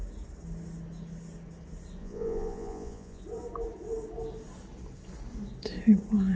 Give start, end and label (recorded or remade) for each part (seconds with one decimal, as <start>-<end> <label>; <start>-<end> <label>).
0.0-2.0 recorded; 2.0-3.2 remade; 3.2-6.4 recorded

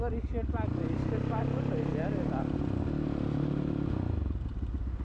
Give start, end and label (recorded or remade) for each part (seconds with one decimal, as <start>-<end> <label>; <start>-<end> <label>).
0.0-5.0 recorded

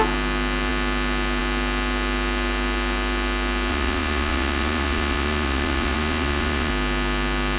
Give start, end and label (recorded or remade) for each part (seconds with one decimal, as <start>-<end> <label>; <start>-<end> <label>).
0.0-3.7 recorded; 3.7-6.7 remade; 6.7-7.6 recorded